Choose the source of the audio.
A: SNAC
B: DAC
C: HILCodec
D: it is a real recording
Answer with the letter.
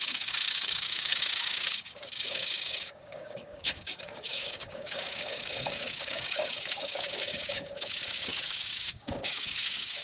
B